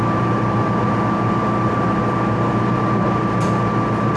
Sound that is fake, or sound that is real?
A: real